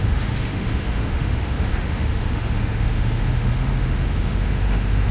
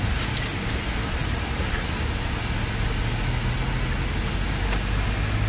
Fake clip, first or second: first